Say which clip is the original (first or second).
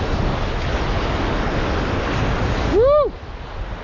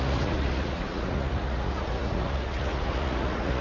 first